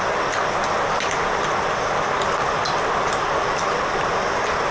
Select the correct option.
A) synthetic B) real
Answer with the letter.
B